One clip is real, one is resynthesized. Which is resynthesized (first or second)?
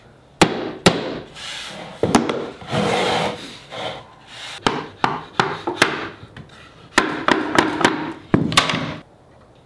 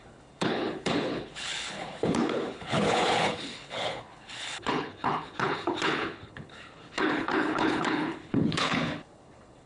second